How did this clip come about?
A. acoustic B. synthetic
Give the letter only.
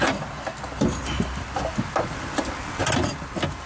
A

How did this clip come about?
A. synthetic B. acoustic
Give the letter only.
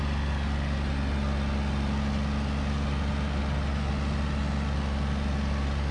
B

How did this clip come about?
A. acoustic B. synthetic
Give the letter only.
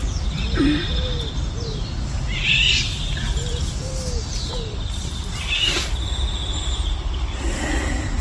A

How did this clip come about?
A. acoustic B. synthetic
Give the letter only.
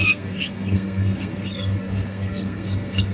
B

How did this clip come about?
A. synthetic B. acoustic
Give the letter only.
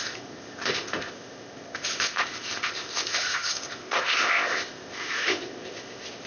A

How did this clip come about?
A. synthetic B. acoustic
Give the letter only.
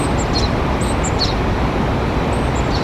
B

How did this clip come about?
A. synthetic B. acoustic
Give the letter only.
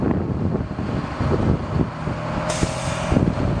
B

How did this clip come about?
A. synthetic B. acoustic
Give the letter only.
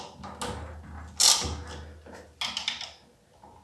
B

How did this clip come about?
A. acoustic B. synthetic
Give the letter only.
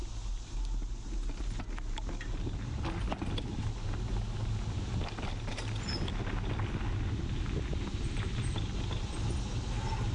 A